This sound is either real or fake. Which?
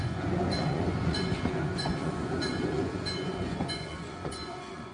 fake